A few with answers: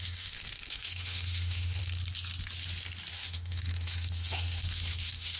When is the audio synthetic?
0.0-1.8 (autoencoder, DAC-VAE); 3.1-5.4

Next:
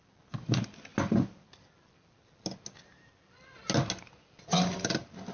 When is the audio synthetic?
none

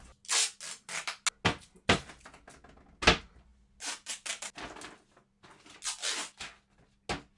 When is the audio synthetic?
none

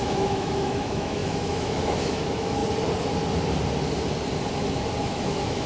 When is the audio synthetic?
0.0-2.6 (autoencoder, DAC-VAE); 5.0-5.7

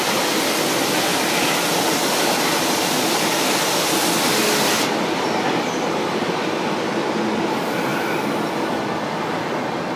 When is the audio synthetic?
none